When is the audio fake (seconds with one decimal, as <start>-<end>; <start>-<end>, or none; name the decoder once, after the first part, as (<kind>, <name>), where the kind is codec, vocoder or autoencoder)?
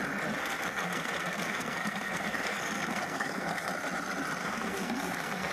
0.4-3.7 (codec, SNAC); 4.4-5.5